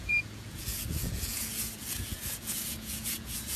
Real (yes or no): no